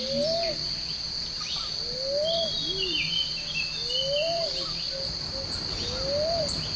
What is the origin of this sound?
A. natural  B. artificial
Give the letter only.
A